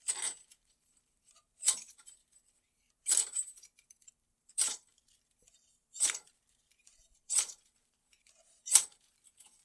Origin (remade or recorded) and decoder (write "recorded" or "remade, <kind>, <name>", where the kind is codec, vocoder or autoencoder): remade, vocoder, BigVGAN v2